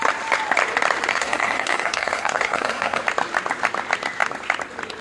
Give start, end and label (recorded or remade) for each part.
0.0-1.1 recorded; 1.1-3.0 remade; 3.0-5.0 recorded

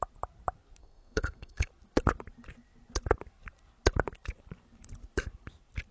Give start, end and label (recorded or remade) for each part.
0.0-0.8 recorded; 0.8-1.7 remade; 1.7-5.9 recorded

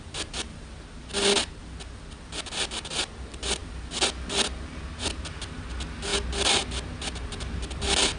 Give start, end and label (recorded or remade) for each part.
0.0-8.2 recorded

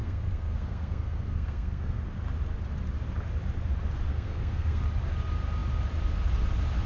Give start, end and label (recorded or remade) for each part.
0.0-2.0 remade; 2.0-4.1 recorded; 4.1-4.8 remade; 4.8-6.9 recorded